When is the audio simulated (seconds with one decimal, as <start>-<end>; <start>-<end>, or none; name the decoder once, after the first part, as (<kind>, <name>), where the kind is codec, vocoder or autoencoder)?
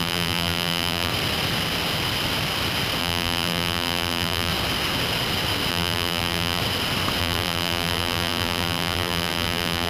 0.0-1.1 (vocoder, BigVGAN v2); 3.0-4.5; 5.7-6.6; 7.2-9.9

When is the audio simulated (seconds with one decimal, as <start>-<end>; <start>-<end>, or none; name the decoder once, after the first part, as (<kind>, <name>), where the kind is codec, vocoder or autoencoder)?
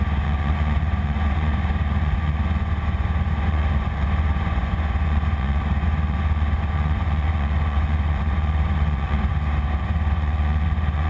0.0-9.3 (vocoder, Vocos); 9.8-11.1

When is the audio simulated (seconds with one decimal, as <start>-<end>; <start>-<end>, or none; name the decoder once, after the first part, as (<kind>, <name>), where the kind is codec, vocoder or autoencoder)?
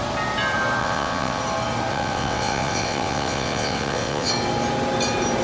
0.8-1.4 (vocoder, WaveNeXt); 1.9-4.3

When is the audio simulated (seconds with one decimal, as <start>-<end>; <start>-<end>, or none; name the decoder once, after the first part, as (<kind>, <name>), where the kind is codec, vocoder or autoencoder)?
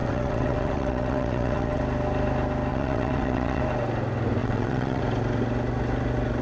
0.0-1.8 (vocoder, WaveNeXt); 2.7-3.6; 4.4-5.0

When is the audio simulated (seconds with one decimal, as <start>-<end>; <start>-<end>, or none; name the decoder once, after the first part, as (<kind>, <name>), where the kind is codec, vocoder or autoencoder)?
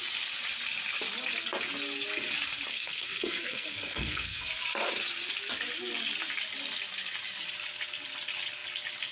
2.7-4.5 (codec, SNAC)